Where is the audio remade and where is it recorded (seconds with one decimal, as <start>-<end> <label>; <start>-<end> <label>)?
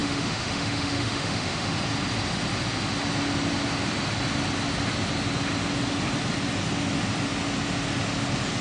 0.0-1.8 remade; 1.8-8.6 recorded